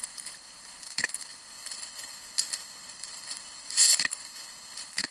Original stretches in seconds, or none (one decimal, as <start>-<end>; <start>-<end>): none